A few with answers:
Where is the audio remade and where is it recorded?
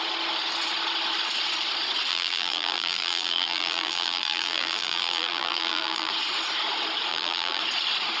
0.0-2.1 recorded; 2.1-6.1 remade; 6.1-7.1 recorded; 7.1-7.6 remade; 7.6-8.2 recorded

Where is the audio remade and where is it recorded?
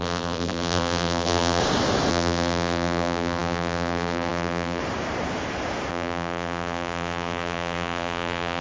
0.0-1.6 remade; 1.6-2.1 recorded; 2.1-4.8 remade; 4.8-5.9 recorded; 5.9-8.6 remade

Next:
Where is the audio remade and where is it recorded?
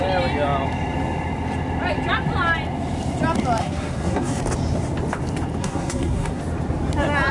0.0-3.6 recorded; 3.6-4.4 remade; 4.4-5.6 recorded; 5.6-6.4 remade; 6.4-7.3 recorded